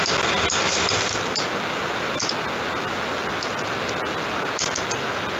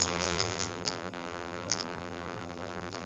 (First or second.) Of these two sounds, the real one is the first